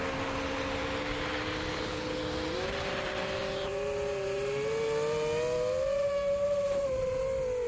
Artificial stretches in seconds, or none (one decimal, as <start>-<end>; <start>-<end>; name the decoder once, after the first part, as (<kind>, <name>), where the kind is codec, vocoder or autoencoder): 1.7-2.2 (codec, HILCodec)